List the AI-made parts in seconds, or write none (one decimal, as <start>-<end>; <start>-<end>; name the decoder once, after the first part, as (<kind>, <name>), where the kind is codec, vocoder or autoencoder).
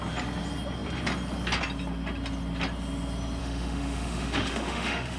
3.4-5.2 (autoencoder, DAC-VAE)